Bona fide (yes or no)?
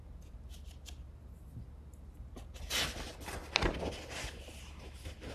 yes